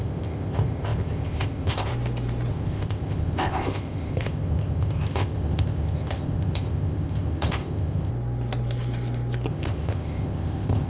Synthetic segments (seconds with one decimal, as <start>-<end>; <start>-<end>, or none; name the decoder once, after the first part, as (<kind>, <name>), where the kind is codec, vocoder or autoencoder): 0.0-1.9 (codec, ZipCodec); 2.5-8.1; 9.5-10.9